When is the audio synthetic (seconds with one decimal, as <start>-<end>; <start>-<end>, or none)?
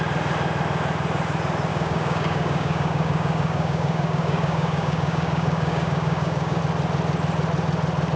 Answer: 1.7-6.6